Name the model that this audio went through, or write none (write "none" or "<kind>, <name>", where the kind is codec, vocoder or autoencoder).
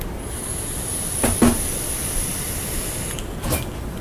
none